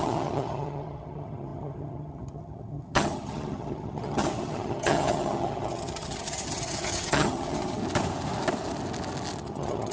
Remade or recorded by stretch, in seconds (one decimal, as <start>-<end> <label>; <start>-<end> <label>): 0.0-7.8 remade; 7.8-9.4 recorded; 9.4-9.9 remade